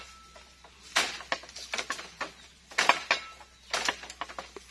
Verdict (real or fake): real